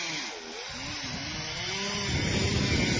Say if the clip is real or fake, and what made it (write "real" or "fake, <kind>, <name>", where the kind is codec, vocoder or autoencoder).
real